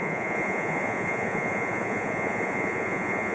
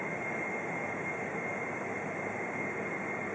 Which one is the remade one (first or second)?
first